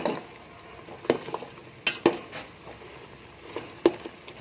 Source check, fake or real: real